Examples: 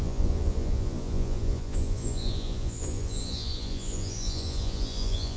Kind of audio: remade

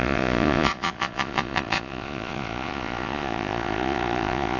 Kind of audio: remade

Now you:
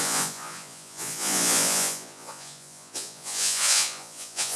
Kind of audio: remade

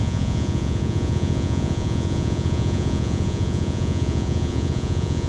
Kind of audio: remade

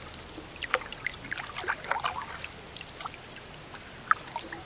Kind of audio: recorded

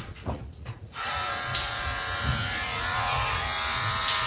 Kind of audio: remade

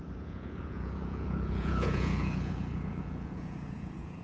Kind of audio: remade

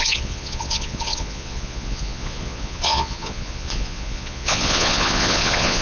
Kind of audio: remade